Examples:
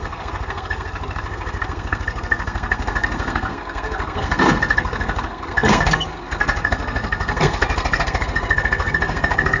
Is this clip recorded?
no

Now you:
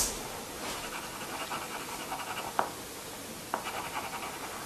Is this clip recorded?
yes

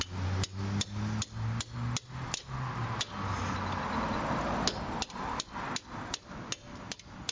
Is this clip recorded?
yes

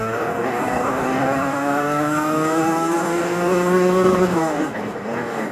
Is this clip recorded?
no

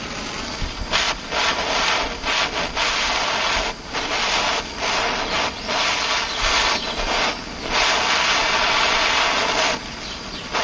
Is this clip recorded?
yes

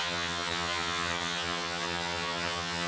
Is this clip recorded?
no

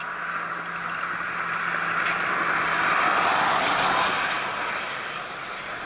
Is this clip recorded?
yes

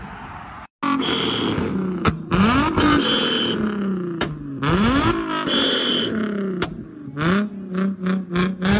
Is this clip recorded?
yes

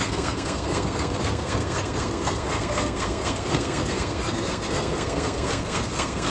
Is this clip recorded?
no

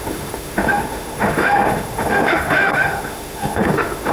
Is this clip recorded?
no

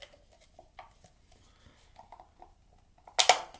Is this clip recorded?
yes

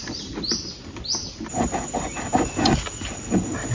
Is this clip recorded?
yes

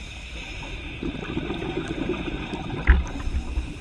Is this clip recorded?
yes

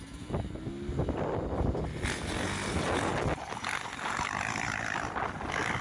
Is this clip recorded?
yes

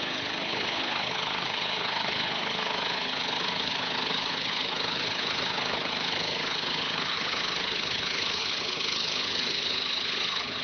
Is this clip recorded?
no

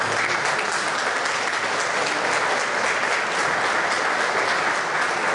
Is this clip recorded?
yes